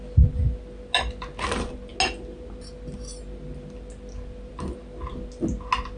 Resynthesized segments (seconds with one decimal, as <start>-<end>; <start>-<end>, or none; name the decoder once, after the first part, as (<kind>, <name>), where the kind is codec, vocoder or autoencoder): none